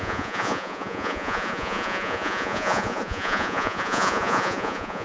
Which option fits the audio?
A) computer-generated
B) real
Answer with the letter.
A